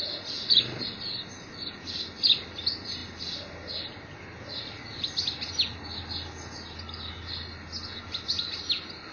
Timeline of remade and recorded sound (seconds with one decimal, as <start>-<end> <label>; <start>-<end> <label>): 0.0-9.1 recorded